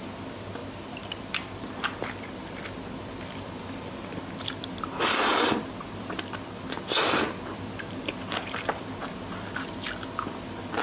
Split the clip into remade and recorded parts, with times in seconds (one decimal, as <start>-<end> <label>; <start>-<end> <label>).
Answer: 0.0-10.8 recorded